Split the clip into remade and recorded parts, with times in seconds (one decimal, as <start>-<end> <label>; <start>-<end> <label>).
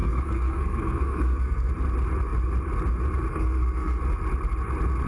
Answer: 0.0-1.7 remade; 1.7-3.3 recorded; 3.3-4.0 remade; 4.0-5.1 recorded